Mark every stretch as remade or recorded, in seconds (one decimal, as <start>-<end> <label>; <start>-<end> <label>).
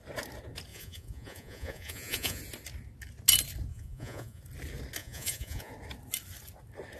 0.0-0.7 recorded; 0.7-2.4 remade; 2.4-3.7 recorded; 3.7-4.4 remade; 4.4-5.0 recorded; 5.0-5.7 remade; 5.7-7.0 recorded